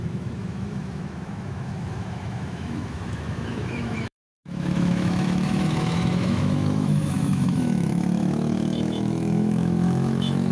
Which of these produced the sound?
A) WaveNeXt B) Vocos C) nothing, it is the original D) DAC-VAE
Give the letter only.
D